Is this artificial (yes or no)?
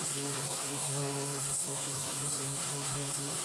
yes